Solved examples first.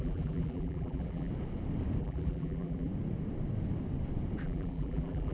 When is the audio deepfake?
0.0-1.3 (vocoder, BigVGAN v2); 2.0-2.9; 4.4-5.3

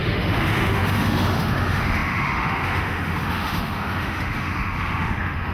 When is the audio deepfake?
0.0-5.5 (autoencoder, DAC-VAE)